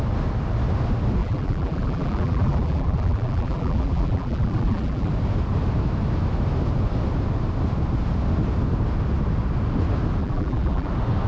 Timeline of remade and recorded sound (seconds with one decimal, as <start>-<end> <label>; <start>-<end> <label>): 0.0-1.2 recorded; 1.2-5.1 remade; 5.1-10.2 recorded; 10.2-10.9 remade; 10.9-11.3 recorded